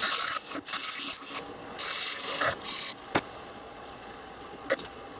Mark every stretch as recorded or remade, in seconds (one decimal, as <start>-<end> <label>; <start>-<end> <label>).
0.0-3.5 recorded; 3.5-5.2 remade